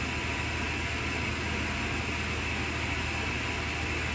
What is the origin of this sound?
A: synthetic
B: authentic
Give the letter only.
B